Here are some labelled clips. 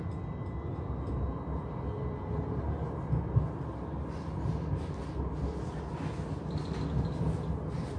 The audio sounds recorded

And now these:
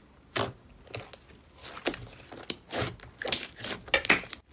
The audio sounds recorded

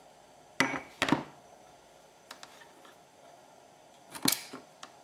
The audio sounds recorded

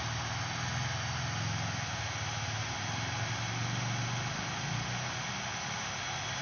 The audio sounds recorded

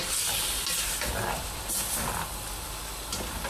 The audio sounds recorded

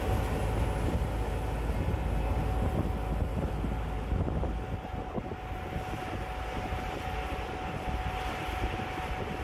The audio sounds recorded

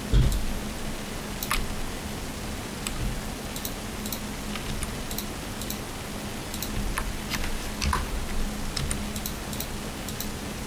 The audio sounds recorded